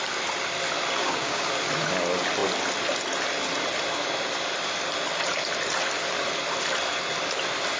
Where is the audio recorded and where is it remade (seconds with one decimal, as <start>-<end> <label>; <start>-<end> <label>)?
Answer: 0.0-1.0 recorded; 1.0-1.5 remade; 1.5-7.8 recorded